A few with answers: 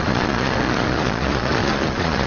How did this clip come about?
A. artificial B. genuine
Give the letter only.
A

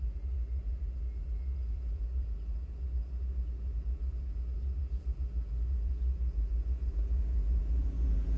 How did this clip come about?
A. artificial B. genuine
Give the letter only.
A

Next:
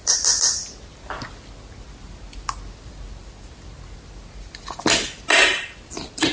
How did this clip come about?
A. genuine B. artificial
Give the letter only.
A